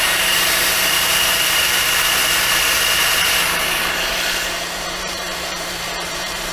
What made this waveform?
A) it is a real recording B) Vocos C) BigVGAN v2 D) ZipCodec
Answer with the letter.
C